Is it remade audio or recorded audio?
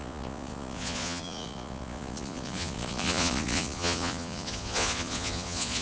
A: remade